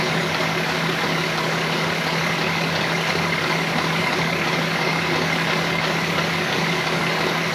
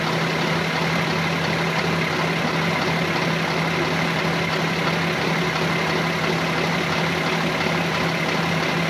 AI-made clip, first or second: first